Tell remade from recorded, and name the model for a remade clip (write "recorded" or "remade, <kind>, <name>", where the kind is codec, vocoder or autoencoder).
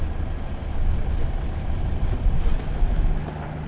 recorded